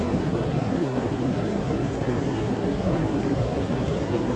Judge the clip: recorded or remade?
remade